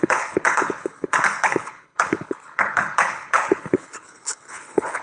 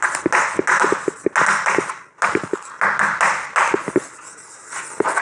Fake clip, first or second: first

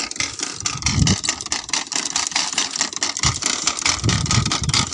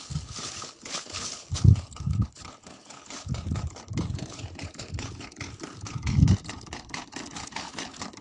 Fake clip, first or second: second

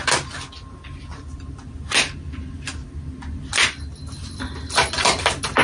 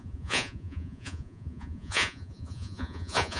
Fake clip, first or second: second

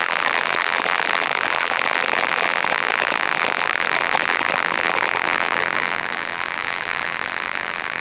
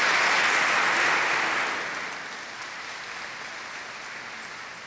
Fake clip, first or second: first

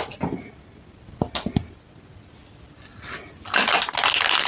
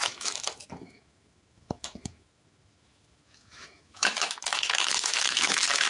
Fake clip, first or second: second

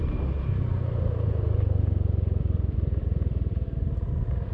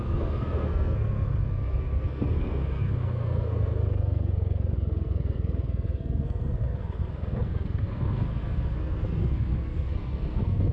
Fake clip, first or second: second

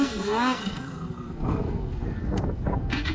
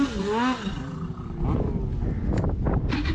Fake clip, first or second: first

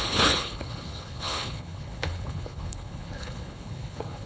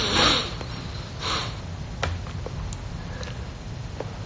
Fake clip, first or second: first